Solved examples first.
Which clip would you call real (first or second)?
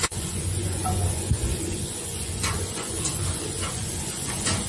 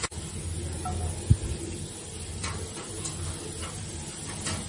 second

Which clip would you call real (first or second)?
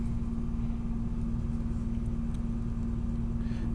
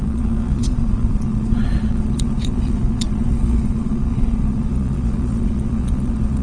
first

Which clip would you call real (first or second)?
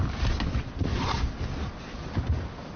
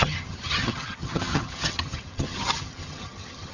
first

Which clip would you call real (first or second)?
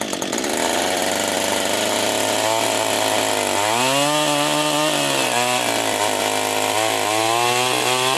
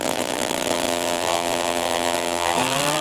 first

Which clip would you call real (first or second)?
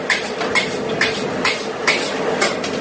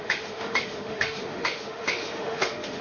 first